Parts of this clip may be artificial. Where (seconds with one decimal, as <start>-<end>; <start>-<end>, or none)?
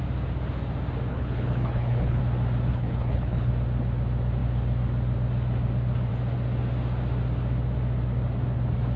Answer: 1.1-2.2; 2.7-3.5